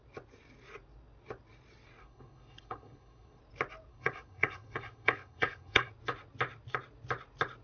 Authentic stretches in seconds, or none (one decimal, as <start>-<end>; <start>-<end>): 0.0-2.0; 3.4-3.9; 5.9-7.6